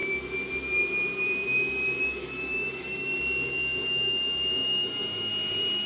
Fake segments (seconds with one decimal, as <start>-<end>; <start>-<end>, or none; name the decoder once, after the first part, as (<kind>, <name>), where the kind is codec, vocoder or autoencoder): 2.0-5.3 (autoencoder, DAC-VAE)